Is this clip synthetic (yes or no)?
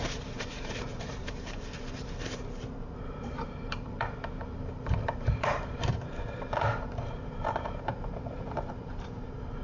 yes